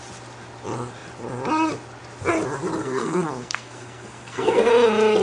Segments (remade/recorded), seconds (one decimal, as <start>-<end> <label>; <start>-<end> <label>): 0.0-2.8 recorded; 2.8-4.7 remade; 4.7-5.2 recorded